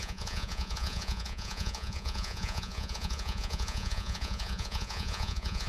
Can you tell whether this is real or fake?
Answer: fake